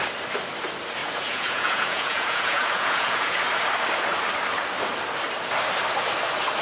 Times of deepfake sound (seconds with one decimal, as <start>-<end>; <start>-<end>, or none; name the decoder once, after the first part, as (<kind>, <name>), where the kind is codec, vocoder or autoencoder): 1.0-3.4 (vocoder, Vocos)